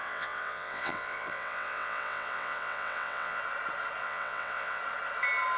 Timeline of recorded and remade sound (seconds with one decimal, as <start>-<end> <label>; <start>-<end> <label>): 0.0-3.4 remade; 3.4-4.0 recorded; 4.0-4.8 remade; 4.8-5.6 recorded